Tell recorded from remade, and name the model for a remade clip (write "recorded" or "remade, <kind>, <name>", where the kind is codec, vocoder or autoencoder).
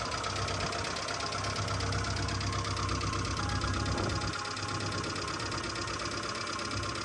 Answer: recorded